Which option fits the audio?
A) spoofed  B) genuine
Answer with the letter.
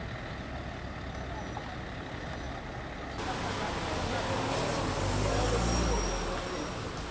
B